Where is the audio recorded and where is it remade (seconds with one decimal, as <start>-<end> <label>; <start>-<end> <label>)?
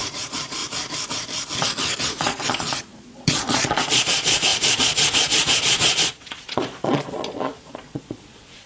0.0-0.6 remade; 0.6-2.0 recorded; 2.0-8.7 remade